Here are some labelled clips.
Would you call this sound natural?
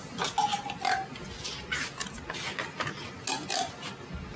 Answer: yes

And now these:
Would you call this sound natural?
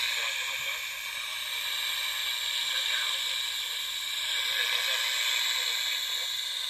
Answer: yes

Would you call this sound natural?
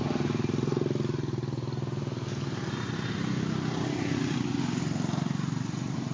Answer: yes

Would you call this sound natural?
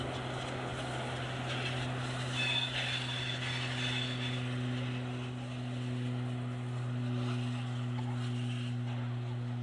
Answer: yes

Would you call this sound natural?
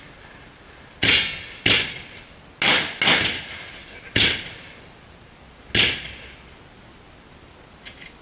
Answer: yes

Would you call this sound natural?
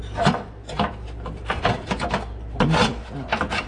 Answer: yes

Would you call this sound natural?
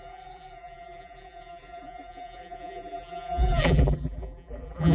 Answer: no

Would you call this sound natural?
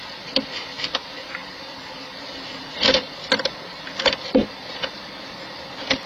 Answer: yes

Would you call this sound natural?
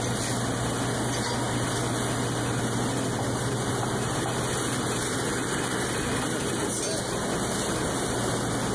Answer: yes